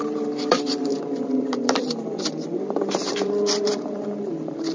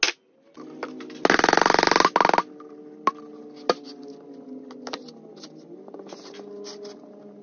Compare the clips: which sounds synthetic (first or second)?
first